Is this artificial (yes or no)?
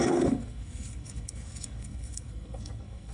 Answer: yes